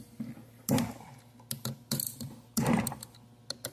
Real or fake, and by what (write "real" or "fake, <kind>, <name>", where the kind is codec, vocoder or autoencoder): real